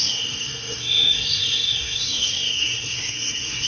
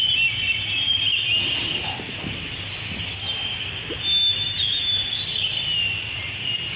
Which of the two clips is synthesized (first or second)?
first